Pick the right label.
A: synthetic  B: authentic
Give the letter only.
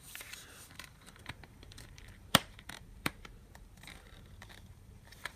A